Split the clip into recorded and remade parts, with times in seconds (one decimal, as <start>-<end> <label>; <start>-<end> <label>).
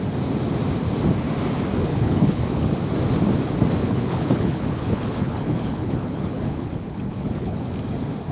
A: 0.0-1.9 recorded; 1.9-2.7 remade; 2.7-3.8 recorded; 3.8-7.7 remade; 7.7-8.3 recorded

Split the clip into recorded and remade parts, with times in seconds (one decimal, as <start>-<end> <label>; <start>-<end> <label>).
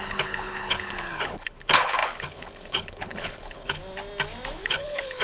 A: 0.0-3.8 remade; 3.8-4.5 recorded; 4.5-5.2 remade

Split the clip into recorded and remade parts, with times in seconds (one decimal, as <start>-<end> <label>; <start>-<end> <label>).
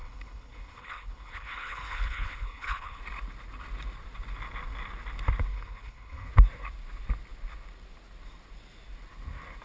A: 0.0-3.0 remade; 3.0-5.5 recorded; 5.5-6.3 remade; 6.3-9.6 recorded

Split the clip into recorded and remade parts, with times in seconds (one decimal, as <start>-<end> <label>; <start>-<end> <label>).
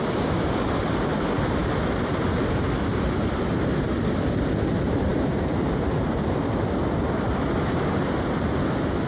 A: 0.0-9.1 recorded